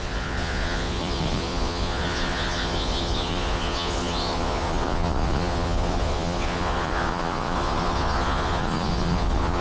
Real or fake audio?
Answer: fake